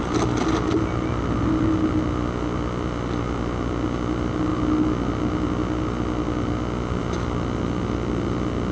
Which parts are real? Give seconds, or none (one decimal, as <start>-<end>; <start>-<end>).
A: 0.0-8.7